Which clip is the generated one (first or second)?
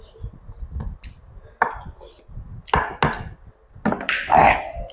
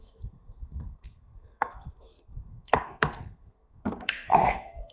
second